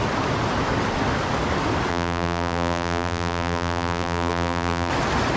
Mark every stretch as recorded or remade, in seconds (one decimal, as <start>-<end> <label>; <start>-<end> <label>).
0.0-1.9 recorded; 1.9-4.9 remade; 4.9-5.4 recorded